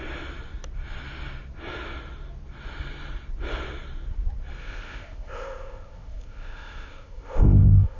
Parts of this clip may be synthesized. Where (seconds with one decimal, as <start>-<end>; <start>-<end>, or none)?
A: 4.6-8.0